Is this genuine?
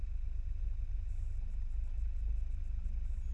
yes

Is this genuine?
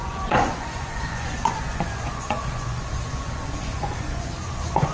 no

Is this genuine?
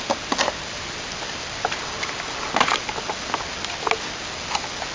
yes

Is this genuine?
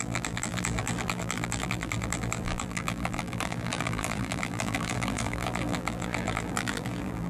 no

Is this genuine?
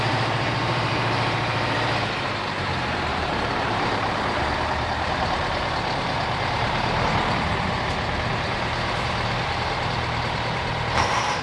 no